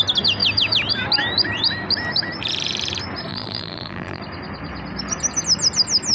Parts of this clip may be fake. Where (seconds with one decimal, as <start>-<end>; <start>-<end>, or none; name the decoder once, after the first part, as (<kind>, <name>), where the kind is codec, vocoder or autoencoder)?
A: 3.3-4.2 (vocoder, BigVGAN v2)